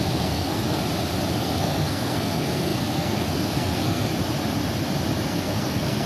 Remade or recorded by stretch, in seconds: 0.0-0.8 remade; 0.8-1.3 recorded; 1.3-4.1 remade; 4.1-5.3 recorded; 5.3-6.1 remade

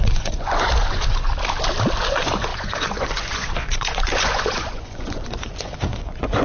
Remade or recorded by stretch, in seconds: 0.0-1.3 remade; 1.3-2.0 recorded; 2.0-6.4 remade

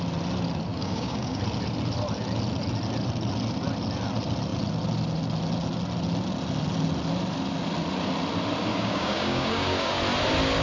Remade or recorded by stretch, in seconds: 0.0-0.7 recorded; 0.7-1.4 remade; 1.4-8.7 recorded; 8.7-10.0 remade; 10.0-10.6 recorded

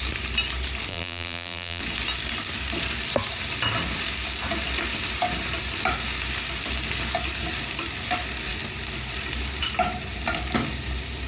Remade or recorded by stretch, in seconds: 0.0-0.9 recorded; 0.9-1.8 remade; 1.8-11.3 recorded

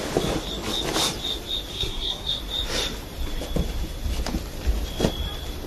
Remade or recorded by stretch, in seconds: 0.0-1.7 recorded; 1.7-2.4 remade; 2.4-5.7 recorded

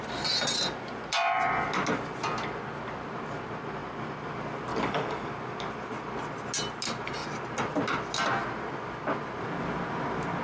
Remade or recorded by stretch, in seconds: 0.0-4.7 recorded; 4.7-5.3 remade; 5.3-10.4 recorded

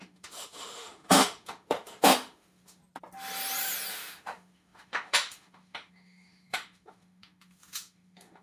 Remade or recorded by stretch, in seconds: 0.0-2.8 remade; 2.8-3.9 recorded; 3.9-8.4 remade

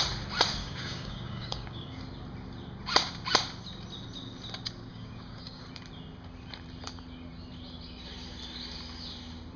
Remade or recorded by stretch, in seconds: 0.0-0.6 recorded; 0.6-2.0 remade; 2.0-4.9 recorded; 4.9-5.6 remade; 5.6-9.6 recorded